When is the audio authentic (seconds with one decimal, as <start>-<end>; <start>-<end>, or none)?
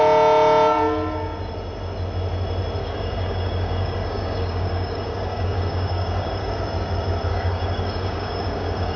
0.0-2.8; 6.6-7.3